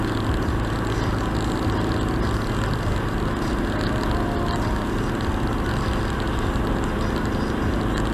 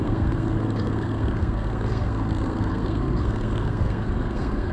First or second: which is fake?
second